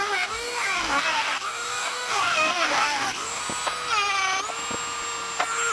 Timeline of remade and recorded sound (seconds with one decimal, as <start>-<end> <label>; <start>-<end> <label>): 0.0-3.4 remade; 3.4-5.7 recorded